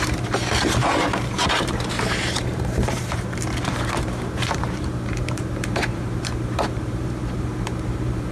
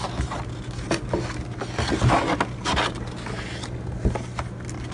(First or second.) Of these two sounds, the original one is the second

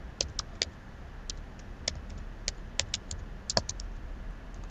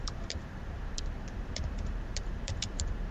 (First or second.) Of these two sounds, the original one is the first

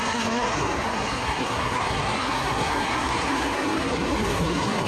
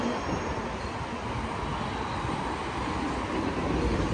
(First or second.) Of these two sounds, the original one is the second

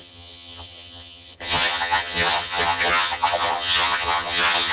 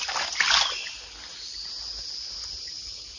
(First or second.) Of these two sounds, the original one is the second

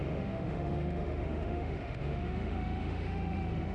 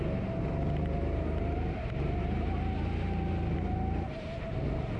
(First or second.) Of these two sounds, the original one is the second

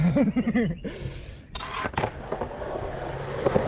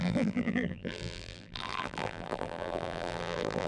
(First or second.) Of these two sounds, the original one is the first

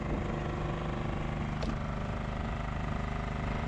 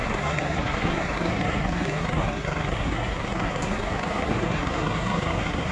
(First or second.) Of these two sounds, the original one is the first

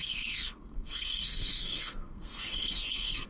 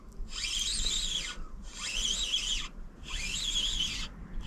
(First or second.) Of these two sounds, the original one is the second